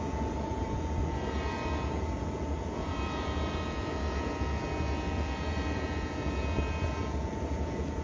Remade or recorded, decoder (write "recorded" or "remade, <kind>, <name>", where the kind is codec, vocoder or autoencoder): remade, vocoder, Vocos